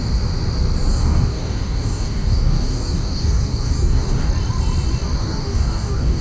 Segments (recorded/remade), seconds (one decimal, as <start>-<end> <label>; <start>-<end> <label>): 0.0-0.9 recorded; 0.9-4.3 remade; 4.3-5.2 recorded; 5.2-6.2 remade

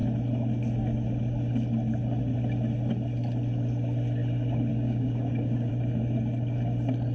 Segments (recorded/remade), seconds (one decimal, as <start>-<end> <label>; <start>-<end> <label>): 0.0-4.7 recorded; 4.7-5.7 remade; 5.7-7.1 recorded